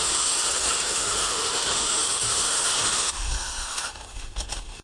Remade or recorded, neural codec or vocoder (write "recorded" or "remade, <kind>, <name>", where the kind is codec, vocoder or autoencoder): remade, autoencoder, DAC-VAE